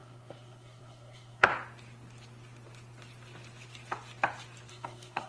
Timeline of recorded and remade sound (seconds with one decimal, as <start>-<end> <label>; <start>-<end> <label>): 0.0-1.5 remade; 1.5-4.7 recorded; 4.7-5.3 remade